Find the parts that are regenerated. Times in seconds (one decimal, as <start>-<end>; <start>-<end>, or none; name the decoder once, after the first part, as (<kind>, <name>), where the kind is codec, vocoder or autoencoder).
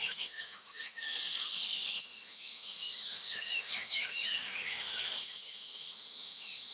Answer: 0.0-6.7 (autoencoder, DAC-VAE)